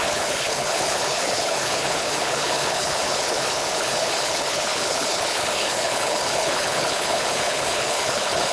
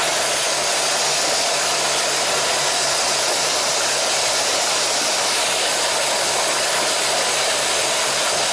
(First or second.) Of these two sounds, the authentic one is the second